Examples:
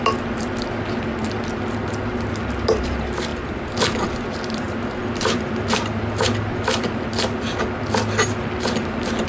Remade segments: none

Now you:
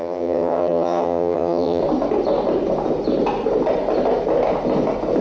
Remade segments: 0.0-1.8 (vocoder, HiFi-GAN)

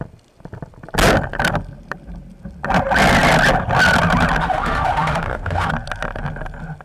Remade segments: 4.4-5.7 (autoencoder, DAC-VAE)

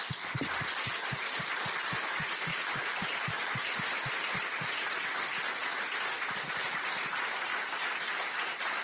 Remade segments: 0.0-2.5 (vocoder, BigVGAN v2); 6.5-7.5; 8.0-8.8

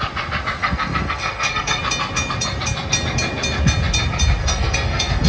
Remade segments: 0.6-1.8 (codec, SNAC); 4.4-5.3